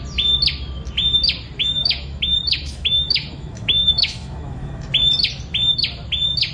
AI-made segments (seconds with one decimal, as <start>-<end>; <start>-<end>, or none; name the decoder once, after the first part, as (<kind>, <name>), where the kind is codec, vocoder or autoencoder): 1.6-4.9 (autoencoder, DAC-VAE)